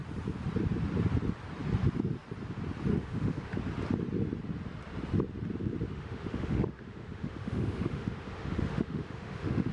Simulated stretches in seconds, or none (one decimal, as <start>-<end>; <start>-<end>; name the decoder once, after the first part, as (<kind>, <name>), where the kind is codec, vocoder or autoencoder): 2.9-3.6 (autoencoder, DAC-VAE); 5.9-9.7